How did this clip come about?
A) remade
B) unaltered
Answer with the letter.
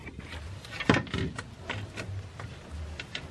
B